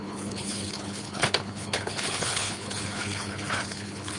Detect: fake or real fake